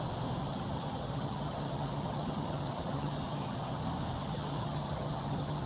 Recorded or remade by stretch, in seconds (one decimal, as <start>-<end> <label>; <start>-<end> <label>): 0.0-0.4 recorded; 0.4-3.8 remade; 3.8-4.2 recorded; 4.2-5.7 remade